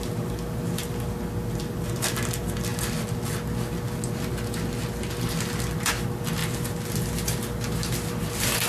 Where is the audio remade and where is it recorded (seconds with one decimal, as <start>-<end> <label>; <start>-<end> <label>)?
0.0-8.7 recorded